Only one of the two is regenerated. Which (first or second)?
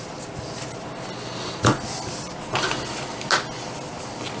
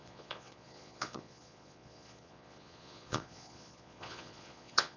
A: second